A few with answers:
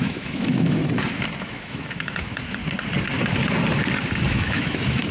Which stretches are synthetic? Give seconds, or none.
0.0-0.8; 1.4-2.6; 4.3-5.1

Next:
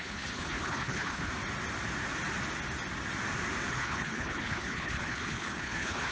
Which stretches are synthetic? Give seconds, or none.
0.0-1.3; 3.7-6.1

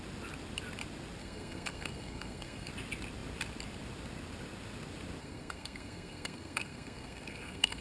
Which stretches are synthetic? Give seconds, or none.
1.2-2.7; 5.2-7.8

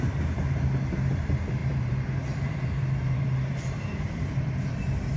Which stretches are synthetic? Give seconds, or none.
1.6-4.4

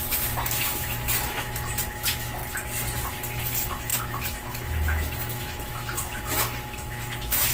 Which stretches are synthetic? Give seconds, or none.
0.0-2.4; 3.1-7.5

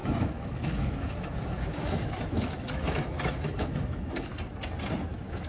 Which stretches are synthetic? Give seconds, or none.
0.0-4.3; 5.1-5.5